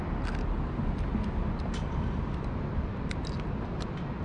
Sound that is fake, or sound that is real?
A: real